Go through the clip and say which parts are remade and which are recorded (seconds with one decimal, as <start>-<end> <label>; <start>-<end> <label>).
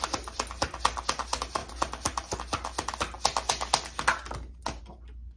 0.0-5.4 recorded